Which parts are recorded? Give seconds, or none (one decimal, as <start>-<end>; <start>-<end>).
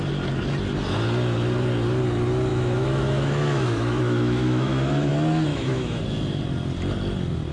0.0-2.5; 5.1-5.5; 6.0-7.5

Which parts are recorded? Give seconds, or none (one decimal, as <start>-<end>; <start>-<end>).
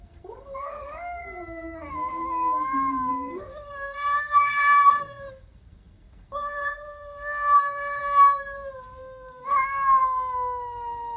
8.0-8.8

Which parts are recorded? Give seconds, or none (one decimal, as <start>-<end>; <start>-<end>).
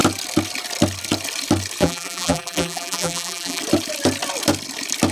0.0-1.8; 3.6-5.1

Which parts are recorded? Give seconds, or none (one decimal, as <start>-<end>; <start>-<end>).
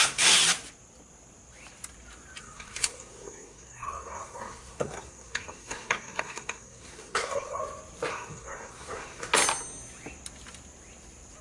0.4-2.4; 7.6-8.1; 9.3-11.4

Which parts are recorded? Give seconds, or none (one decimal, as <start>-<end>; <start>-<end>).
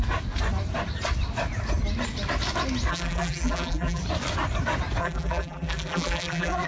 0.0-2.9; 4.0-5.0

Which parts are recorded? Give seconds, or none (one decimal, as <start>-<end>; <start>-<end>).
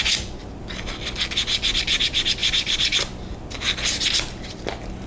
0.0-0.4; 1.2-2.4; 3.7-5.1